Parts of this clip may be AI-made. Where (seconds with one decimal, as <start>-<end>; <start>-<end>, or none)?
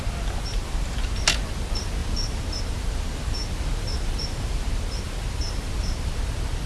2.0-5.4